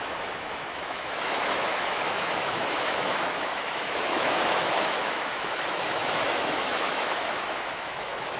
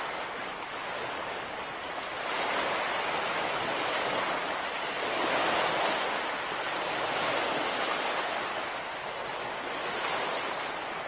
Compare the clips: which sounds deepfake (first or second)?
first